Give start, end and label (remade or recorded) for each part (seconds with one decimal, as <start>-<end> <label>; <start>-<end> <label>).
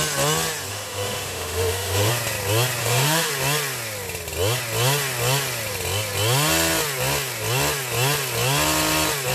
0.0-0.7 recorded; 0.7-2.1 remade; 2.1-2.8 recorded; 2.8-3.3 remade; 3.3-9.3 recorded